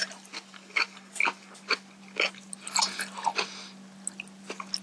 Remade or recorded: recorded